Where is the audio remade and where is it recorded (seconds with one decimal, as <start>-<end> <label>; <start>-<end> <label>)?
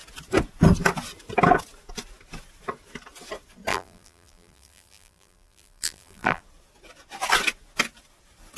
0.0-3.7 recorded; 3.7-6.4 remade; 6.4-8.6 recorded